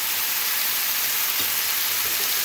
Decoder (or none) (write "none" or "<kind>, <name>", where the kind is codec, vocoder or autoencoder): none